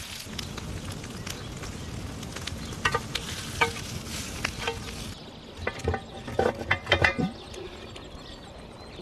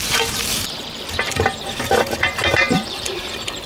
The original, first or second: first